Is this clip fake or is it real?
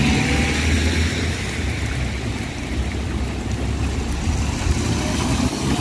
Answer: real